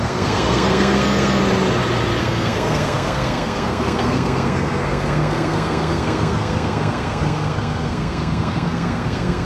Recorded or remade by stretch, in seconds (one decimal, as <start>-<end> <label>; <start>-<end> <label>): 0.0-1.4 remade; 1.4-2.2 recorded; 2.2-9.4 remade